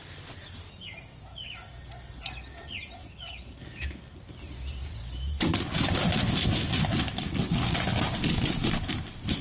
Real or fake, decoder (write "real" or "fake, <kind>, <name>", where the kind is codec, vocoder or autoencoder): real